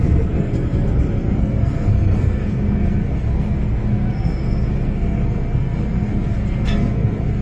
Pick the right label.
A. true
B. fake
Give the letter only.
B